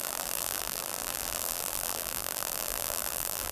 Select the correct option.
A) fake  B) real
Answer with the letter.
A